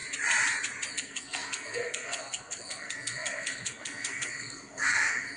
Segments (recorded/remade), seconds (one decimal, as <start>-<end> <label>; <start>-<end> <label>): 0.0-0.9 recorded; 0.9-5.4 remade